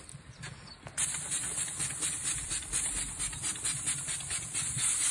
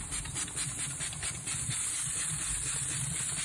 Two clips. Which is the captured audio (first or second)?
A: second